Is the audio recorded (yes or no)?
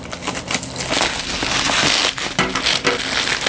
yes